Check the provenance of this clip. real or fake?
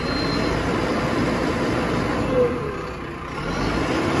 real